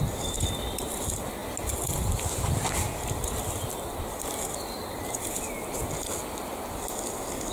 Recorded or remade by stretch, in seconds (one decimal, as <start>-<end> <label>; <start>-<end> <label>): 0.0-7.5 recorded